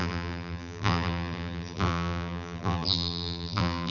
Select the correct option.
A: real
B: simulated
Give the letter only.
B